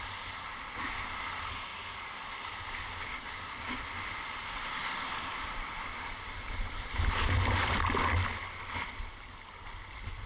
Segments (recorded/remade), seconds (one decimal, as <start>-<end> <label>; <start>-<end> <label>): 0.0-10.3 recorded

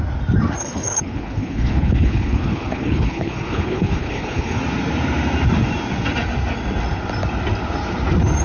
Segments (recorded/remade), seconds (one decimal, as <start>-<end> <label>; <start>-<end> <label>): 0.0-0.6 recorded; 0.6-4.6 remade; 4.6-8.4 recorded

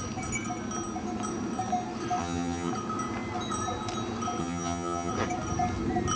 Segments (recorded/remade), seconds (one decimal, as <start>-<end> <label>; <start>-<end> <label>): 0.0-2.2 recorded; 2.2-2.7 remade; 2.7-4.4 recorded; 4.4-5.1 remade; 5.1-6.2 recorded